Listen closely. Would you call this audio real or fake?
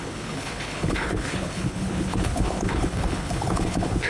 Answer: fake